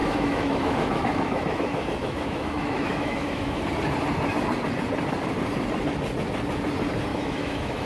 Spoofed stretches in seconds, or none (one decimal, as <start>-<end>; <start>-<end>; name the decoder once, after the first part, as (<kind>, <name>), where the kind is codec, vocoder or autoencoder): 0.0-3.6 (autoencoder, DAC-VAE); 7.1-7.9

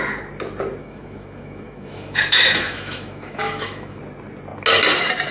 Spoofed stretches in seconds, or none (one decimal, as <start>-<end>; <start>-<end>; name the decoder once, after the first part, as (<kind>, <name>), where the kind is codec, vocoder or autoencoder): 0.8-4.0 (autoencoder, DAC-VAE)

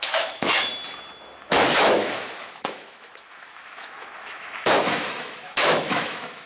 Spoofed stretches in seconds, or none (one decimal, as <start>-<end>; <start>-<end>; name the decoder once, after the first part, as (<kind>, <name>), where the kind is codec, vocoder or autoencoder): 0.0-0.7 (autoencoder, DAC-VAE); 1.5-6.5

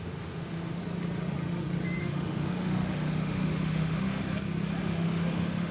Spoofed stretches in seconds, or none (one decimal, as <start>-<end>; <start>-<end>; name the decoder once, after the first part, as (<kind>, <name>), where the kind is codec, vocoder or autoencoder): 0.0-0.8 (autoencoder, DAC-VAE); 2.0-4.2; 4.8-5.7

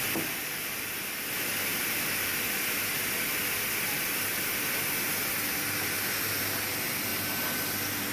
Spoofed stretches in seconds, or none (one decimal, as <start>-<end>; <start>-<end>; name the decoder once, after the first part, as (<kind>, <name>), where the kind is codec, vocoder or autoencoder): none